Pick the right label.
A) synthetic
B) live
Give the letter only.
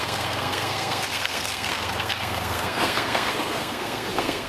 A